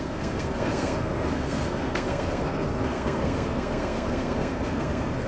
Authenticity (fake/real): fake